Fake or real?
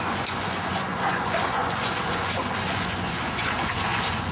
fake